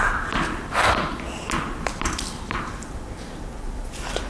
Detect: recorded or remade remade